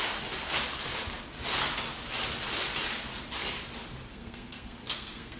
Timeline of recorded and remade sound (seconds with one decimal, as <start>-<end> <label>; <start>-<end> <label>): 0.0-4.1 recorded; 4.1-5.4 remade